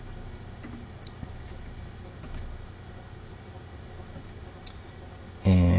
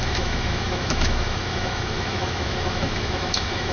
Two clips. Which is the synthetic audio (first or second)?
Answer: second